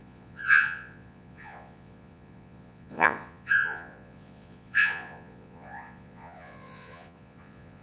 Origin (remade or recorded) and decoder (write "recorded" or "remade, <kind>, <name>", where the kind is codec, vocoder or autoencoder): remade, vocoder, Vocos